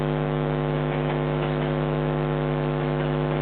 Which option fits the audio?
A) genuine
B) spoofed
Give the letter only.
B